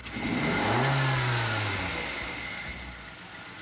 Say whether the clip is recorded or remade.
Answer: recorded